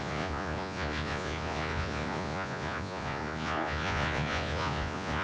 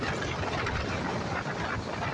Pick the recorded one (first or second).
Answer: second